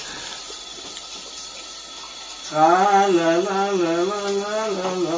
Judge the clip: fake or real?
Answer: real